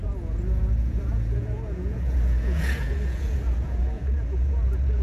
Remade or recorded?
remade